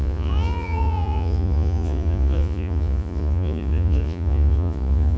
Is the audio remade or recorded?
remade